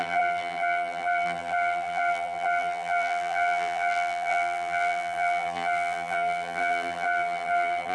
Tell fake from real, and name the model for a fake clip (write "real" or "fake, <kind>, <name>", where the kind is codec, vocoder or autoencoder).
fake, vocoder, BigVGAN v2